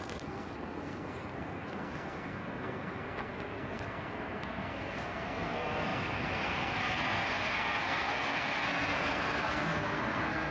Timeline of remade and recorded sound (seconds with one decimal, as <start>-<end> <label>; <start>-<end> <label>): 0.0-10.5 remade